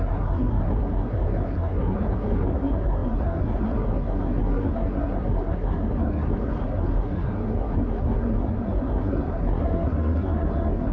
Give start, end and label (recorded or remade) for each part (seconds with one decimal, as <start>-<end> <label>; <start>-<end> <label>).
0.0-10.9 remade

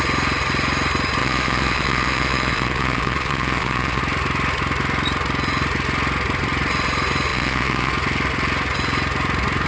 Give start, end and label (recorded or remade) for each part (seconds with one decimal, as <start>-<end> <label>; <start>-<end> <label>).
0.0-1.2 recorded; 1.2-4.0 remade; 4.0-7.3 recorded; 7.3-7.9 remade; 7.9-9.7 recorded

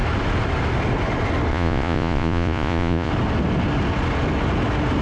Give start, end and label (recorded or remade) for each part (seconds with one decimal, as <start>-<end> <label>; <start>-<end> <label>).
0.0-1.5 recorded; 1.5-3.1 remade; 3.1-5.0 recorded

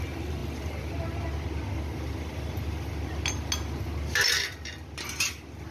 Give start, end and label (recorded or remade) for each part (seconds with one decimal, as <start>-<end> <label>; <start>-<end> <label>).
0.0-5.7 recorded

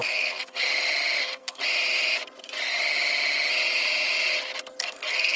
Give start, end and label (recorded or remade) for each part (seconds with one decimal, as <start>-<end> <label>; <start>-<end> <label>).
0.0-0.7 remade; 0.7-1.2 recorded; 1.2-1.6 remade; 1.6-4.8 recorded; 4.8-5.4 remade

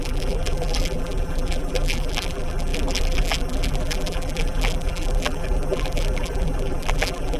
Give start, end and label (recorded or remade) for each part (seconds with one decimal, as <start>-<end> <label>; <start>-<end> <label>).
0.0-7.4 remade

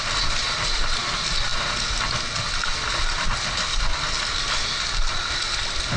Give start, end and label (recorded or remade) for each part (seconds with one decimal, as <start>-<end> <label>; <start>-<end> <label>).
0.0-6.0 recorded